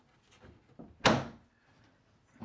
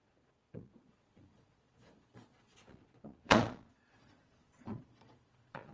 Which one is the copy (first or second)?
second